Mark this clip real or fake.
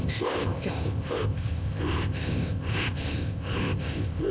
fake